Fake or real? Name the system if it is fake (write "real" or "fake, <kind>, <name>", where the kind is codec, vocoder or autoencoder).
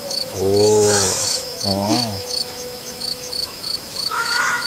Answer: fake, autoencoder, DAC-VAE